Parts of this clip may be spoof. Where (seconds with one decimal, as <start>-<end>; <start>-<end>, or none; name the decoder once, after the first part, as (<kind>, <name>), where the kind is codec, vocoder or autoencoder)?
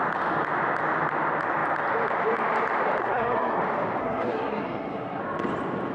3.0-3.6 (codec, SNAC); 4.0-5.2